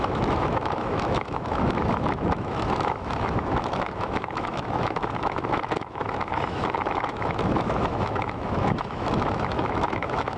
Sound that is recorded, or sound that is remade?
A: remade